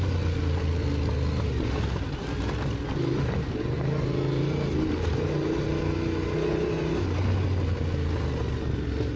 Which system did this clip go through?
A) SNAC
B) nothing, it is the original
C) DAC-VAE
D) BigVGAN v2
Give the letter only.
B